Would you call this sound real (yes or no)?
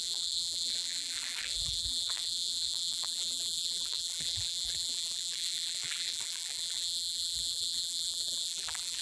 no